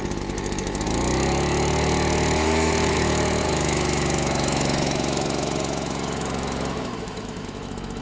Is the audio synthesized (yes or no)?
yes